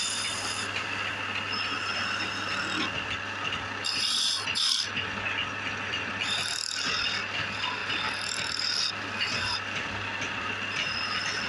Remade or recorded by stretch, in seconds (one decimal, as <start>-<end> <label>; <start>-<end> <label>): 0.0-7.8 remade; 7.8-9.4 recorded; 9.4-11.5 remade